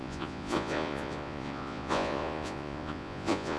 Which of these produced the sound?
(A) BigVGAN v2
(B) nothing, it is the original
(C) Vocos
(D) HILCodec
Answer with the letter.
C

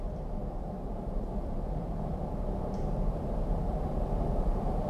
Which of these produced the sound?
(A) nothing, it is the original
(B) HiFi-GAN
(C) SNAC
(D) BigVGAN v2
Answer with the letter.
D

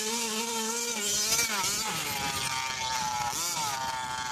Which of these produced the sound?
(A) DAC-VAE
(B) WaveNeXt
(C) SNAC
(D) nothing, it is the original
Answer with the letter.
D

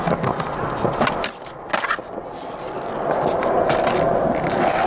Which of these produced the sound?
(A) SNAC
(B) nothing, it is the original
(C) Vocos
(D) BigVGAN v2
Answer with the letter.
B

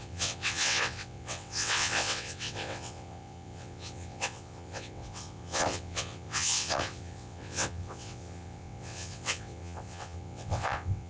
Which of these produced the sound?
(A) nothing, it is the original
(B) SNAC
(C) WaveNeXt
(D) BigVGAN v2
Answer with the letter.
C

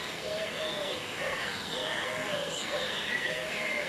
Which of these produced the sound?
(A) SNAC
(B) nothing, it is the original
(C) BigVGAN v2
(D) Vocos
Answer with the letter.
A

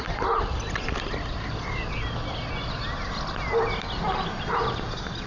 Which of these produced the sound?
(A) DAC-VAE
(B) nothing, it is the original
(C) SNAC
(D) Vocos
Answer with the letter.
B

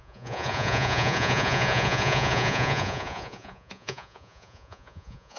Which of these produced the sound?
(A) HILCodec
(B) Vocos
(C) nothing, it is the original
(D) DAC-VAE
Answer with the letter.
B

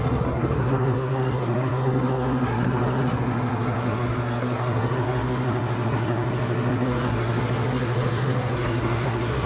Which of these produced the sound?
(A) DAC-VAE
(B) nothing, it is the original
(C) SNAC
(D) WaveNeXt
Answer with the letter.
C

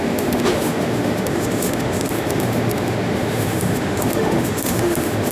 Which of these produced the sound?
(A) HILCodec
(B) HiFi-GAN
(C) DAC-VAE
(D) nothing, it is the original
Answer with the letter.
C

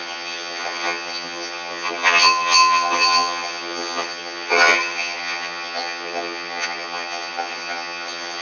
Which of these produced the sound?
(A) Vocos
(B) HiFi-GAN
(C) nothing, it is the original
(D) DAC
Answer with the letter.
B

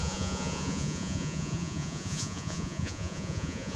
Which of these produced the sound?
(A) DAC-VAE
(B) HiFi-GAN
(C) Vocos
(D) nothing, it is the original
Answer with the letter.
C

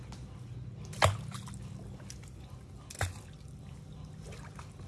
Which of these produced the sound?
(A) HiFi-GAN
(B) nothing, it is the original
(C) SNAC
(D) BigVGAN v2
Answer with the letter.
B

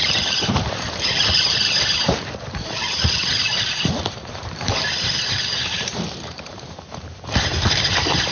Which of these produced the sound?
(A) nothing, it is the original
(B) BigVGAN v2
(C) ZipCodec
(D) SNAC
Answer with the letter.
B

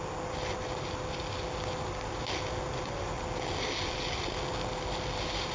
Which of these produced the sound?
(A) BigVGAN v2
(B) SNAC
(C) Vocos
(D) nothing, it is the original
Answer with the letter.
D